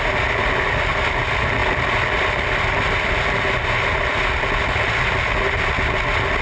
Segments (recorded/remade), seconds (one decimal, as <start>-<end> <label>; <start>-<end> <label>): 0.0-6.4 recorded